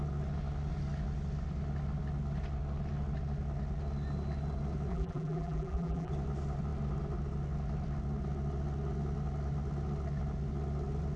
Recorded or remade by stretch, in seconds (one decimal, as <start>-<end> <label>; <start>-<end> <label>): 0.0-4.9 recorded; 4.9-6.1 remade; 6.1-11.2 recorded